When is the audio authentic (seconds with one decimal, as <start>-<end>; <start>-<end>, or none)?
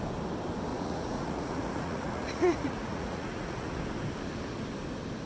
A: 0.0-0.7; 3.8-5.3